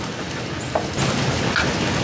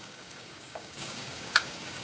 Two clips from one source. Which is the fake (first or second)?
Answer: second